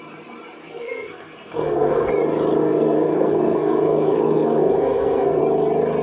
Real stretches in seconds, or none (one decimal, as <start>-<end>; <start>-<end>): 0.0-0.6; 2.1-2.6; 5.4-6.0